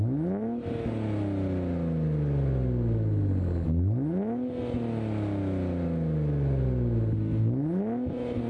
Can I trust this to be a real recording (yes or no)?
yes